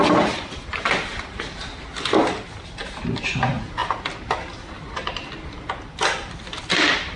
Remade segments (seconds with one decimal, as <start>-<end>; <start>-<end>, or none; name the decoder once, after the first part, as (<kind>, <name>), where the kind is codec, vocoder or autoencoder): 2.8-3.4 (vocoder, BigVGAN v2)